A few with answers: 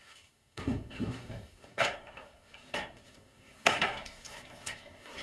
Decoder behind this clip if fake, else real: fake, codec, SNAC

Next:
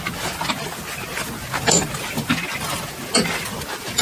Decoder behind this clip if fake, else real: real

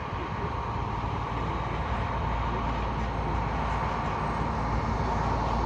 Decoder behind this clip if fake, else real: real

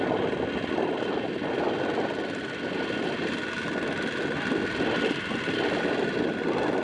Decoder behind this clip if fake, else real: real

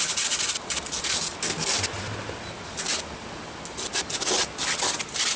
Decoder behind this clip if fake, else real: real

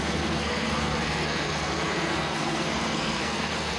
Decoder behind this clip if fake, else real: fake, codec, SNAC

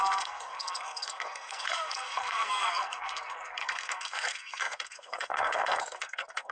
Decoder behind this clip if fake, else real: fake, codec, SNAC